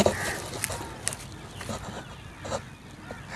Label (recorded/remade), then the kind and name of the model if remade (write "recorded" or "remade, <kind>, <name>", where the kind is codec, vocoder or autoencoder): recorded